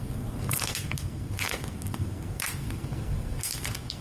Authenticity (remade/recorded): remade